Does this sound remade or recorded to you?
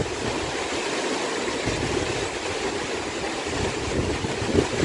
recorded